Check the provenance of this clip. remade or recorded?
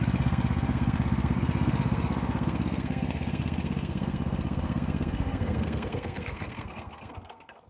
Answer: remade